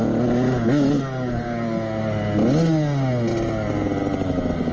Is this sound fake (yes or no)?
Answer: no